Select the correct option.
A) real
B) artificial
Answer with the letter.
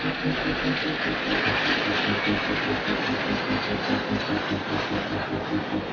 A